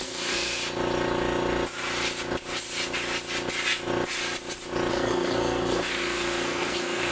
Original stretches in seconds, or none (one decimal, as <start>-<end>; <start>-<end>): 0.6-4.9